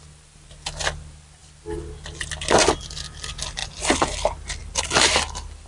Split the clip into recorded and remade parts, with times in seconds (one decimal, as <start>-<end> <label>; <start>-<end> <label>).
0.0-4.6 recorded; 4.6-5.7 remade